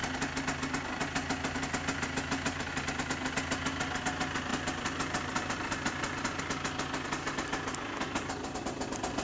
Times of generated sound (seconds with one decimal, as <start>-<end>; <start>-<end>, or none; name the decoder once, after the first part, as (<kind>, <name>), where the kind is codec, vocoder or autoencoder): 4.5-6.4 (vocoder, BigVGAN v2)